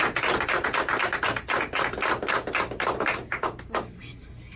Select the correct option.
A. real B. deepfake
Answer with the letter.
A